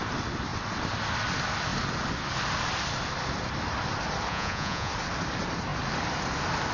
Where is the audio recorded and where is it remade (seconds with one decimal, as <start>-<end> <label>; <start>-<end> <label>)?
0.0-4.3 recorded; 4.3-4.9 remade; 4.9-6.7 recorded